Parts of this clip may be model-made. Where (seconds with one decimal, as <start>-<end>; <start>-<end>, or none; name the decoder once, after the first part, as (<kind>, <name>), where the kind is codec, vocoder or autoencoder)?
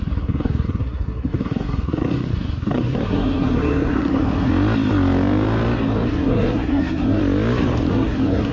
0.0-4.5 (codec, SNAC); 6.1-7.2; 7.9-8.5